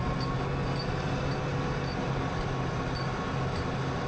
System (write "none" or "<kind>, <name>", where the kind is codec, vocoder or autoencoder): none